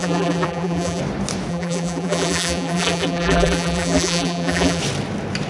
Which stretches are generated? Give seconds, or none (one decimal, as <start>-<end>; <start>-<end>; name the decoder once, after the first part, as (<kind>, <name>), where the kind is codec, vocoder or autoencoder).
0.0-1.0 (vocoder, BigVGAN v2); 1.5-4.8